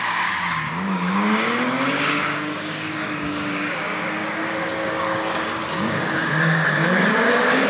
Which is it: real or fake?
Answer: fake